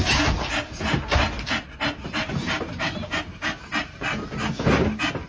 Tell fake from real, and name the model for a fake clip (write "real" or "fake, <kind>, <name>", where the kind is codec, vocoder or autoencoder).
real